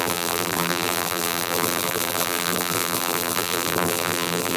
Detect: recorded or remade remade